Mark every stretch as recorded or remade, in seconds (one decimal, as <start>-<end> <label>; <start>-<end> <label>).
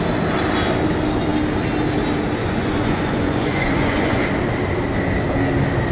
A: 0.0-2.4 recorded; 2.4-4.2 remade; 4.2-5.9 recorded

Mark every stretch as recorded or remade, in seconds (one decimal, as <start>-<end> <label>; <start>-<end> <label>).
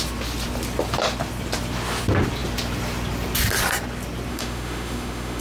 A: 0.0-4.3 recorded; 4.3-5.4 remade